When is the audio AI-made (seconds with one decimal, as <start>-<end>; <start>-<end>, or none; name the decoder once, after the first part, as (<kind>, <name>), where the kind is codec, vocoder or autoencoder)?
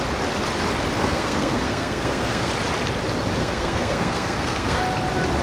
1.0-2.5 (codec, SNAC); 3.4-4.8